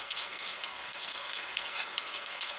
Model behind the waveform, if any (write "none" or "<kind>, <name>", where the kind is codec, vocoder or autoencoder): codec, SNAC